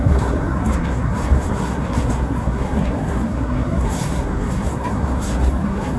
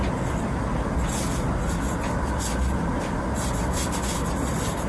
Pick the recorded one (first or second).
second